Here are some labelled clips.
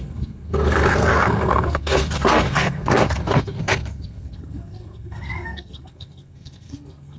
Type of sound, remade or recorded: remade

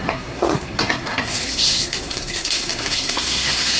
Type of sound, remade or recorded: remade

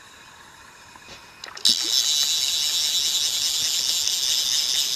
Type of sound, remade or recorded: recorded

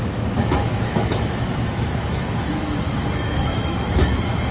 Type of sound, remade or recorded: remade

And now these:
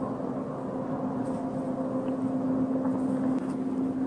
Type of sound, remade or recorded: recorded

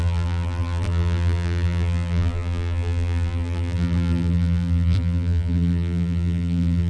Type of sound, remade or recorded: remade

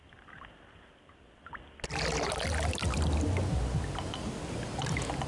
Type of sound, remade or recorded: recorded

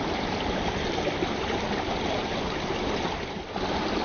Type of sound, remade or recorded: recorded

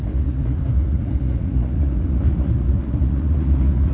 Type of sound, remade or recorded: remade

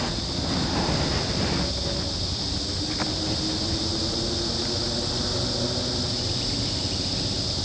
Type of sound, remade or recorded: recorded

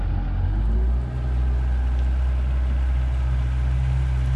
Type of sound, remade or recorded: recorded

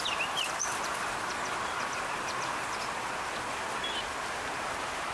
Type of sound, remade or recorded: recorded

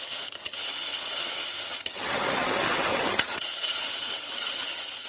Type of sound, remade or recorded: remade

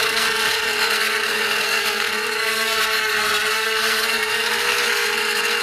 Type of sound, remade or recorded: remade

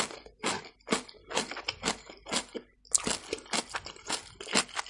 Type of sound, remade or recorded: recorded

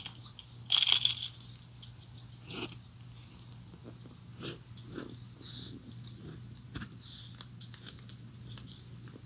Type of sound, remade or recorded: recorded